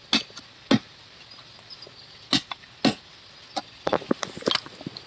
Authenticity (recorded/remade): recorded